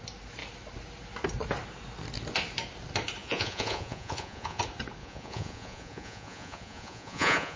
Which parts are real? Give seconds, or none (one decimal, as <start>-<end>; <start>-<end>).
0.0-3.2; 4.6-5.0